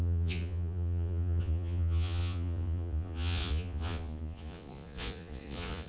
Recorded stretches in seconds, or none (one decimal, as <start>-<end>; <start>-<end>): none